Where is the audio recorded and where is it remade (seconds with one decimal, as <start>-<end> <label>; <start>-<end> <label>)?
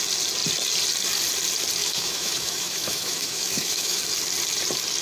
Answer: 0.0-1.8 recorded; 1.8-4.0 remade; 4.0-5.0 recorded